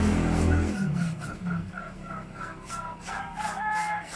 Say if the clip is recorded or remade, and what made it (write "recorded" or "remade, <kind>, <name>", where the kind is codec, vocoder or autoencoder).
remade, codec, SNAC